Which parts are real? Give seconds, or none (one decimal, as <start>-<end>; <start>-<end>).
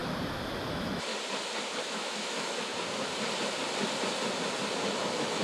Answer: 0.0-0.7; 1.1-1.8; 2.7-5.0